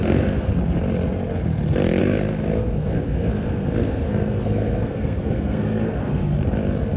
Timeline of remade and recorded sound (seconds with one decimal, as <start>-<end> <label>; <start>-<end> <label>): 0.0-0.5 remade; 0.5-2.0 recorded; 2.0-6.2 remade; 6.2-7.0 recorded